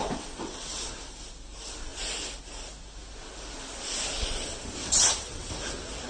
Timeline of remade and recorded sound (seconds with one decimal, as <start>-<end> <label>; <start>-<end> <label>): 0.0-0.9 remade; 0.9-4.8 recorded; 4.8-5.5 remade; 5.5-6.1 recorded